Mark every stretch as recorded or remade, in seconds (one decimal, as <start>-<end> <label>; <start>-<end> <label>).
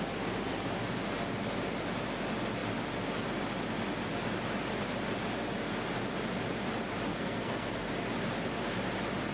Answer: 0.0-7.1 recorded; 7.1-7.9 remade; 7.9-9.3 recorded